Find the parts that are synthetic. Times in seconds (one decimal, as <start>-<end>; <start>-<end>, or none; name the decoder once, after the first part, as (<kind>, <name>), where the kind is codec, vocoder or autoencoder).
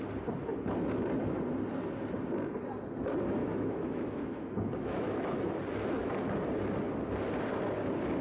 3.4-5.5 (autoencoder, DAC-VAE)